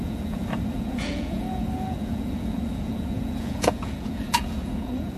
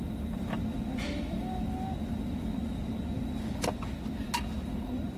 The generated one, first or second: first